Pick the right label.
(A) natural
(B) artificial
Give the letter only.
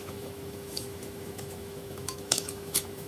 B